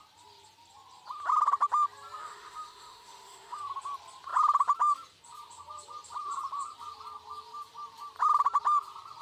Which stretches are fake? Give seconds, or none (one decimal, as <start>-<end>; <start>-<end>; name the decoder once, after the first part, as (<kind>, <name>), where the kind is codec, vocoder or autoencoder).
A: 2.2-3.6 (autoencoder, DAC-VAE)